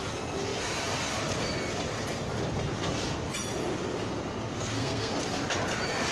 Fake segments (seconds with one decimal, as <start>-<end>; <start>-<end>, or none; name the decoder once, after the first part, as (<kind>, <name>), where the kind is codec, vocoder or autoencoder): 4.5-5.1 (codec, SNAC)